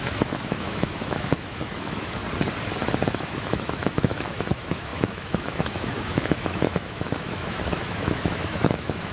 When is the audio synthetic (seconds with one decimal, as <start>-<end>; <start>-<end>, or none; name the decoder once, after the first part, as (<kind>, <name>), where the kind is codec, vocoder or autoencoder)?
0.0-2.2 (autoencoder, DAC-VAE); 3.1-9.1